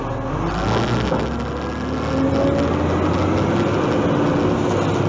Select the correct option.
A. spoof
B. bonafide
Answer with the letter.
B